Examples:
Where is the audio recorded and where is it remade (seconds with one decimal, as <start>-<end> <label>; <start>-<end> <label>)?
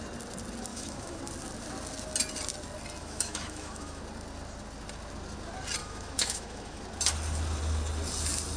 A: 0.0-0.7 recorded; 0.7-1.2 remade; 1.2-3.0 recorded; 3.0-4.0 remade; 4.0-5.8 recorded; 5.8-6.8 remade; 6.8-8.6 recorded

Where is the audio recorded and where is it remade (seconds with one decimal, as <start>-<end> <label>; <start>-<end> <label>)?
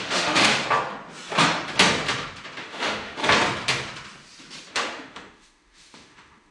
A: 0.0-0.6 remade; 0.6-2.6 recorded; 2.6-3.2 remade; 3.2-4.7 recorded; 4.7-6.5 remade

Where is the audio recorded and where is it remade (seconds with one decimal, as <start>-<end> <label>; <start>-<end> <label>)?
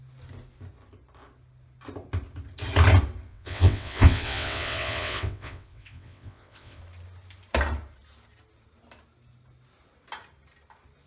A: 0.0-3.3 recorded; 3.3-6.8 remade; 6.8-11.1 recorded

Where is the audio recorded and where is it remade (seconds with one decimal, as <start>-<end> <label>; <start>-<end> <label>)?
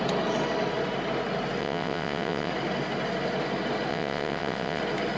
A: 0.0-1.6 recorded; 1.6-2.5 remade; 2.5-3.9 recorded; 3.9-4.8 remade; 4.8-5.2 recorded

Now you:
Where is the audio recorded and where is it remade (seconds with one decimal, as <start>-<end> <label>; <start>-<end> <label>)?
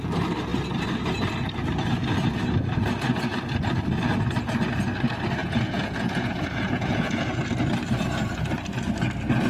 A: 0.0-5.4 recorded; 5.4-7.5 remade; 7.5-9.5 recorded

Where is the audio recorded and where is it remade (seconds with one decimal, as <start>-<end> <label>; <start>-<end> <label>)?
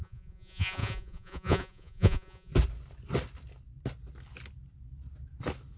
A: 0.0-2.5 remade; 2.5-5.8 recorded